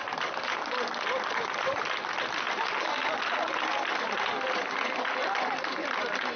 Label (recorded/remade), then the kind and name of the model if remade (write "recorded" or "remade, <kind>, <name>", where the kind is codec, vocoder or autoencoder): recorded